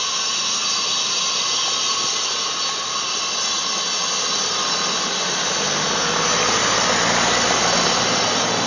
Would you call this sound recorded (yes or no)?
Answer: yes